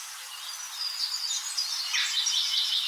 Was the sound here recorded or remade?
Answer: recorded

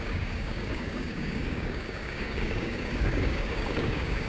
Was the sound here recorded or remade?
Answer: remade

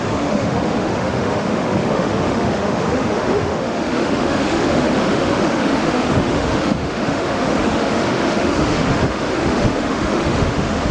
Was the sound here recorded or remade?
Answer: remade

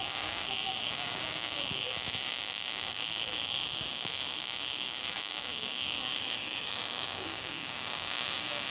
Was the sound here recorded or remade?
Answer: remade